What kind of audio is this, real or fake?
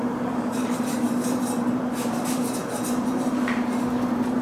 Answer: fake